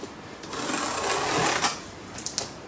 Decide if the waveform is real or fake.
real